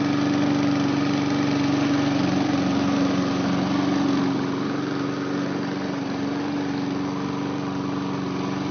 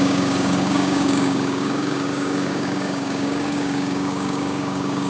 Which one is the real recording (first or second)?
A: first